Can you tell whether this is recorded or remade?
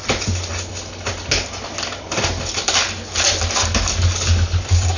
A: recorded